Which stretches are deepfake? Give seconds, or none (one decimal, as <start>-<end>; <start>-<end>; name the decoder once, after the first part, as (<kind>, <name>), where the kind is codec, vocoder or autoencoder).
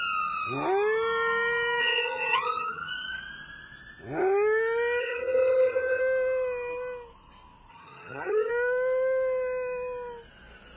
1.8-2.9 (vocoder, HiFi-GAN); 5.0-6.0; 7.7-8.5